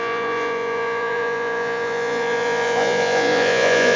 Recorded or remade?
remade